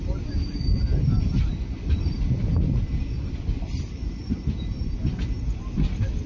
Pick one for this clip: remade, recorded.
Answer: recorded